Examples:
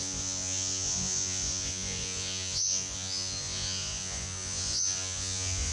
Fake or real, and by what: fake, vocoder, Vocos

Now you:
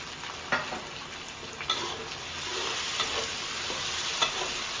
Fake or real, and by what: real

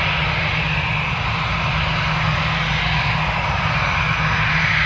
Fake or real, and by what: real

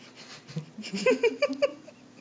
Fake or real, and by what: real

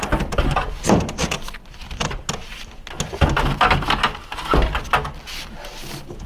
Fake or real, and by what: real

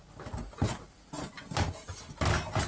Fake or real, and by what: real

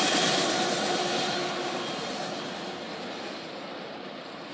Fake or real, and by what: fake, vocoder, BigVGAN v2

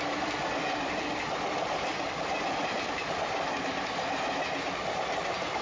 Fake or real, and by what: real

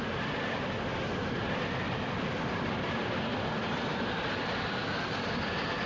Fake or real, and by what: real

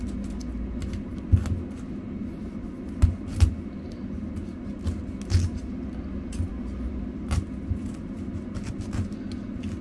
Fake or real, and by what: real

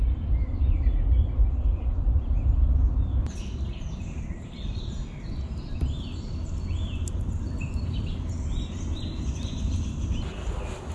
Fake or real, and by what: real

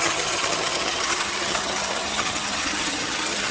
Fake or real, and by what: fake, vocoder, HiFi-GAN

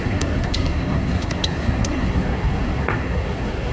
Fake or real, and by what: fake, codec, SNAC